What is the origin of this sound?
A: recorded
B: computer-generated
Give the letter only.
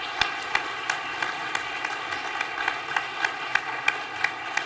A